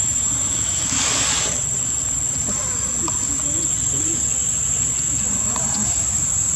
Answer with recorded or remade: recorded